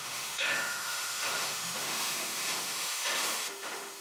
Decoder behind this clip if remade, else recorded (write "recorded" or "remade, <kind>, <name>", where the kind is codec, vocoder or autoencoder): remade, autoencoder, DAC-VAE